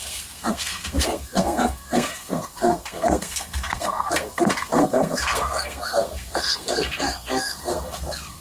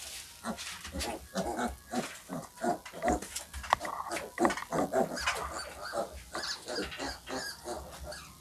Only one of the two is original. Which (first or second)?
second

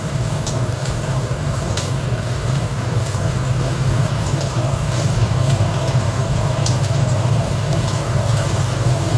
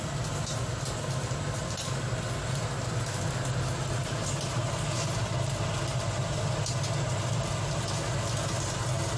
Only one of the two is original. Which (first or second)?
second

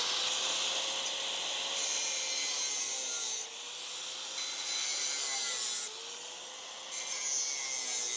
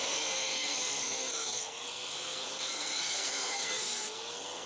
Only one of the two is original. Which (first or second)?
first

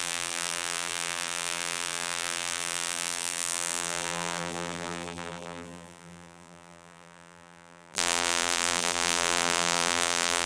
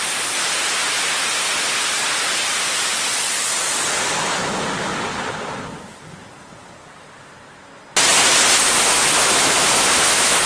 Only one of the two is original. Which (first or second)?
second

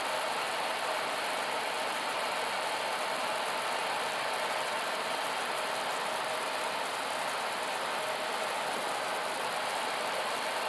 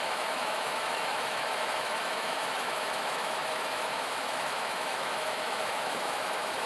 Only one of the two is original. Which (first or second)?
first